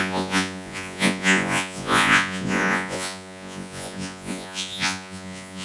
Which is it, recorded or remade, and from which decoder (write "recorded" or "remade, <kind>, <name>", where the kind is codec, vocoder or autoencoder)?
remade, vocoder, Vocos